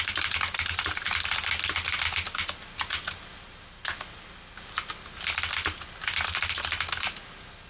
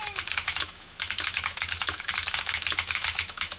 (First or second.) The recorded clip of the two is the first